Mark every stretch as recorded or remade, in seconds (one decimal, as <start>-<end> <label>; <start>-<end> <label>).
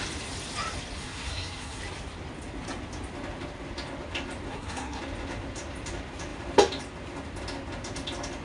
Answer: 0.0-1.0 recorded; 1.0-1.8 remade; 1.8-4.5 recorded; 4.5-5.0 remade; 5.0-8.4 recorded